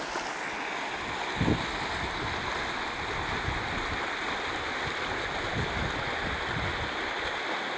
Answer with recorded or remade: recorded